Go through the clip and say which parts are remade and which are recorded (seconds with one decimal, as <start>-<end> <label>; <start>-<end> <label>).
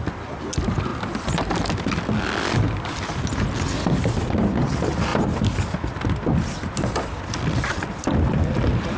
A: 0.0-9.0 recorded